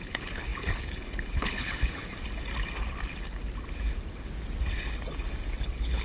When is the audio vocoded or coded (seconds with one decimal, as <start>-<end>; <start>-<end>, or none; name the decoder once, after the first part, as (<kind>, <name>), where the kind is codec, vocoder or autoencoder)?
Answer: 0.0-2.0 (codec, HILCodec); 5.6-6.0